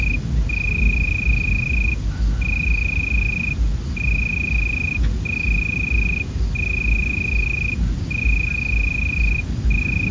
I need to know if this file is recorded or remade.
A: recorded